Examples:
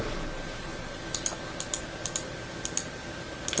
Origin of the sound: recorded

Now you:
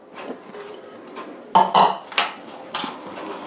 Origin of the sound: recorded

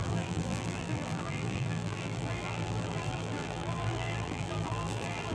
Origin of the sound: remade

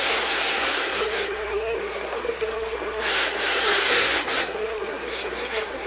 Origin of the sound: remade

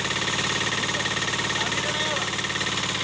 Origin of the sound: recorded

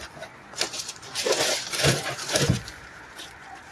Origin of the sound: remade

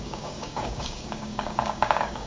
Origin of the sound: remade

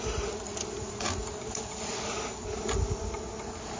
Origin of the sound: recorded